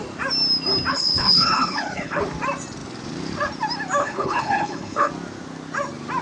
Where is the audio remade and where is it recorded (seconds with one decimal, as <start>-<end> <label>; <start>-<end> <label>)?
0.0-0.9 recorded; 0.9-2.2 remade; 2.2-4.0 recorded; 4.0-5.1 remade; 5.1-6.2 recorded